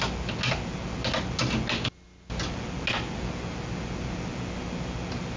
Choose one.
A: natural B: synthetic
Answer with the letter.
A